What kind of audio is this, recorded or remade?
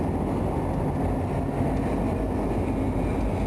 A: recorded